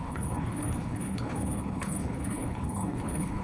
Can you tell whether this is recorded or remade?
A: remade